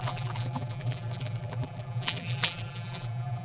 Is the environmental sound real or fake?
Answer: fake